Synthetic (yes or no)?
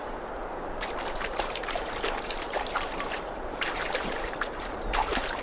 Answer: yes